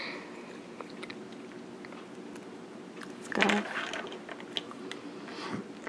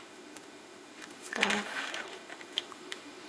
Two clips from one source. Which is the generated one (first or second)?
second